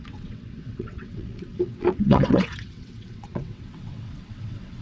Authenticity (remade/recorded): remade